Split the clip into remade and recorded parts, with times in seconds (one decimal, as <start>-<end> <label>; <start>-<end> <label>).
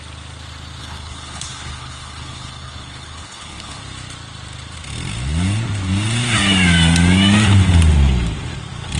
0.0-0.8 recorded; 0.8-3.8 remade; 3.8-9.0 recorded